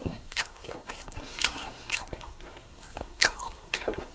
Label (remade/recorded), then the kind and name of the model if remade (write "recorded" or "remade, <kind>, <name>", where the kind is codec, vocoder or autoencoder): remade, codec, SNAC